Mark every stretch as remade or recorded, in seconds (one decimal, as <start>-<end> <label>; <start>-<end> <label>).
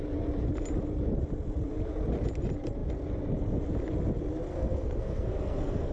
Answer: 0.0-4.5 recorded; 4.5-5.9 remade